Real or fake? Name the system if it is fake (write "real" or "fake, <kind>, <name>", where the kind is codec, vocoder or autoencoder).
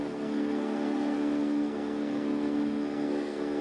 fake, codec, SNAC